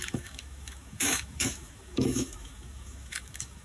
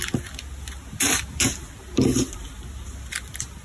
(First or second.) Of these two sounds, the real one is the second